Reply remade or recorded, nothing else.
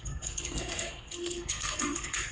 remade